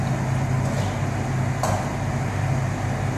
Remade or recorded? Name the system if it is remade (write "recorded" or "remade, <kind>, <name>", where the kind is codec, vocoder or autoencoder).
recorded